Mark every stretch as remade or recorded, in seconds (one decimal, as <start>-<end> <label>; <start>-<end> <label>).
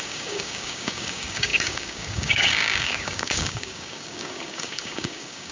0.0-5.5 remade